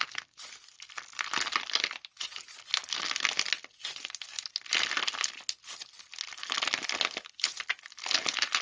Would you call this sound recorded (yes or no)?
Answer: yes